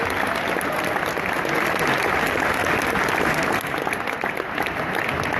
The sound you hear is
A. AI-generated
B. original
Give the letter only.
B